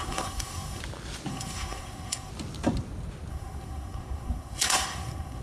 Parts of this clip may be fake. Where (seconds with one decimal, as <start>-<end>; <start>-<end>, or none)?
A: 0.0-0.8; 1.3-2.3; 3.3-5.4